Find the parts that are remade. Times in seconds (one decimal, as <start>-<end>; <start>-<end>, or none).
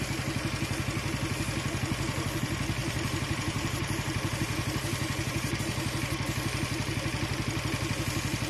2.8-5.6